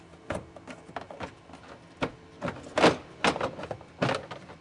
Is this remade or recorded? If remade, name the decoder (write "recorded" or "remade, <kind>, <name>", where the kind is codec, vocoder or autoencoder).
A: recorded